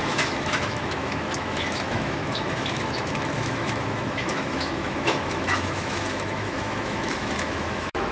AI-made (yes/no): yes